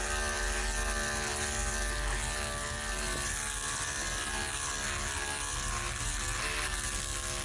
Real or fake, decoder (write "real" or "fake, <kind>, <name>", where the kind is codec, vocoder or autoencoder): real